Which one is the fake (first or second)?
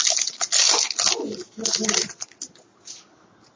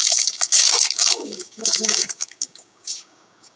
second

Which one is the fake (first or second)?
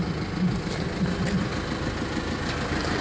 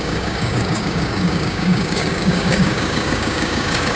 second